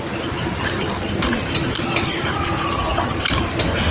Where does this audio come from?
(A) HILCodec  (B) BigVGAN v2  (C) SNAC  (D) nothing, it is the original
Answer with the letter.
D